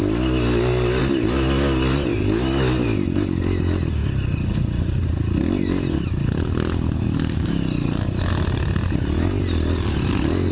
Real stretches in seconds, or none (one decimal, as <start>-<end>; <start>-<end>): 0.0-10.5